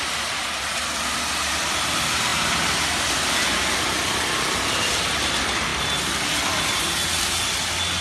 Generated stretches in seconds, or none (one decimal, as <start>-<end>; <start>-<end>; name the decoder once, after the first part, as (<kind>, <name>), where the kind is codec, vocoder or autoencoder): none